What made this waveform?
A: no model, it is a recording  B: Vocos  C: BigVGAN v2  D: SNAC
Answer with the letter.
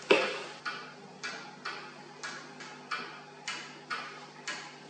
A